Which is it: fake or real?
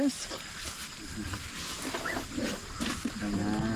real